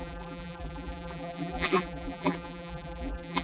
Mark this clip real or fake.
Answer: fake